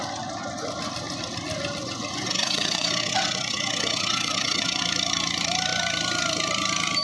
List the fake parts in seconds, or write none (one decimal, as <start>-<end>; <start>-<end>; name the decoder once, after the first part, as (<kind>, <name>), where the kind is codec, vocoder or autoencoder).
1.8-4.8 (vocoder, WaveNeXt)